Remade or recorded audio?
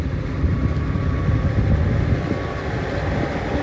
recorded